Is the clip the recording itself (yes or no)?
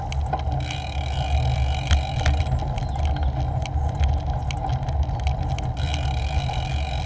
yes